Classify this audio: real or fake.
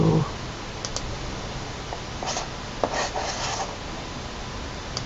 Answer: real